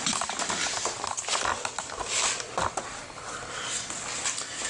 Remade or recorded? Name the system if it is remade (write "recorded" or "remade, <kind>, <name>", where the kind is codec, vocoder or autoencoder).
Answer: recorded